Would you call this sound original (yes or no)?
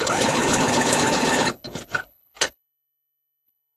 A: no